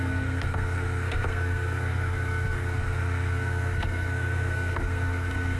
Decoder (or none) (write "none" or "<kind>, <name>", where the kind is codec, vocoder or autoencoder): codec, SNAC